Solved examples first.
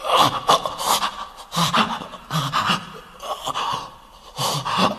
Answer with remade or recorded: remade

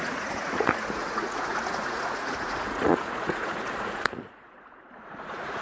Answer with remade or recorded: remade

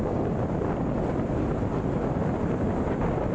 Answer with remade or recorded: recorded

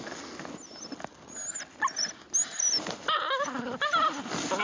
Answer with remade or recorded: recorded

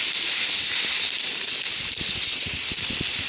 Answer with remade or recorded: recorded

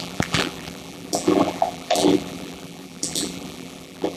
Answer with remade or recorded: remade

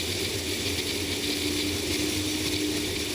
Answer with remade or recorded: recorded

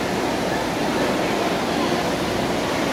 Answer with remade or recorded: recorded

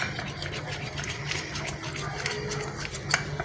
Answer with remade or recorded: recorded